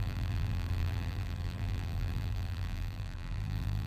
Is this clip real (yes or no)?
no